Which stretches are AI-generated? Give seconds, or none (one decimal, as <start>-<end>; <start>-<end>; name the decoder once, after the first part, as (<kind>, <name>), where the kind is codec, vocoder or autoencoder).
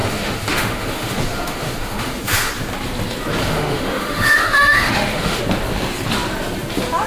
0.0-2.5 (autoencoder, DAC-VAE); 3.4-5.4